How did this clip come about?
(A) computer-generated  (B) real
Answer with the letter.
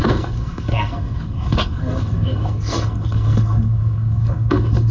A